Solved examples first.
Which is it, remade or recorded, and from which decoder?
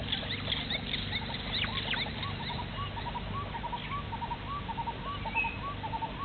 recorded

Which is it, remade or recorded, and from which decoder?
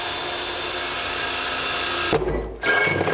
recorded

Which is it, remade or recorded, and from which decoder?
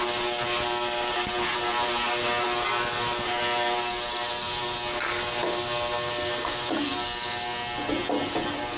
recorded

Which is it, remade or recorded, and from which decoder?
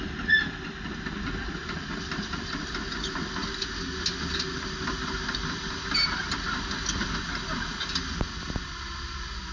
recorded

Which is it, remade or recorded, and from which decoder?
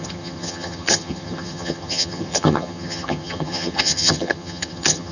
remade, vocoder, HiFi-GAN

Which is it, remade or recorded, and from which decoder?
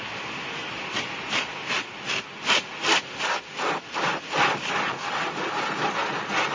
recorded